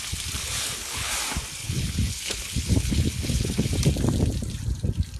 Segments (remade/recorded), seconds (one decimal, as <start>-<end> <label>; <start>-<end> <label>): 0.0-0.4 recorded; 0.4-1.1 remade; 1.1-1.6 recorded; 1.6-3.7 remade; 3.7-5.2 recorded